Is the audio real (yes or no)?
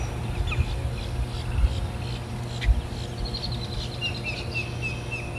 yes